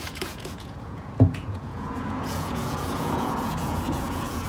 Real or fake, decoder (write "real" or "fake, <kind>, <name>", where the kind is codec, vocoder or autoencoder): fake, vocoder, Vocos